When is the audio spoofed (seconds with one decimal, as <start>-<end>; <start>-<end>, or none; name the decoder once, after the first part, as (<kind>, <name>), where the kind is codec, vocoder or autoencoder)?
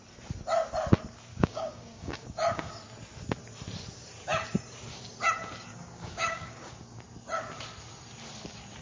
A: 1.3-2.7 (codec, DAC); 5.7-7.0